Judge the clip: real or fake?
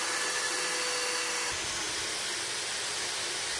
real